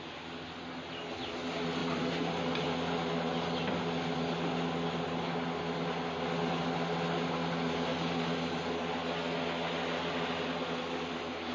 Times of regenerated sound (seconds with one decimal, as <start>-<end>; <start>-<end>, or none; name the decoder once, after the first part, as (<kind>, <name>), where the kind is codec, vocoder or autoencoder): none